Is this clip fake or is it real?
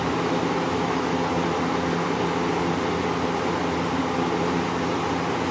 real